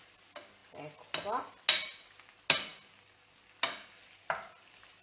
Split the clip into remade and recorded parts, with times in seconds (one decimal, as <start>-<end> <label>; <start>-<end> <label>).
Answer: 0.0-5.0 recorded